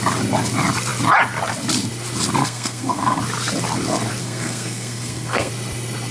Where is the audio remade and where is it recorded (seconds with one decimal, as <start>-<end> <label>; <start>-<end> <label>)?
0.0-2.4 recorded; 2.4-3.2 remade; 3.2-4.2 recorded; 4.2-5.5 remade; 5.5-6.1 recorded